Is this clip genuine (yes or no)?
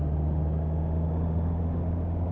yes